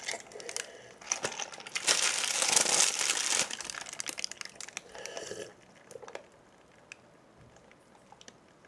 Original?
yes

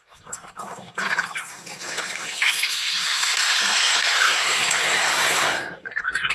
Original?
no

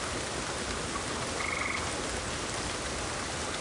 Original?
yes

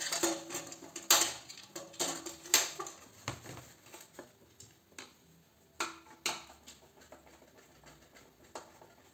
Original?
yes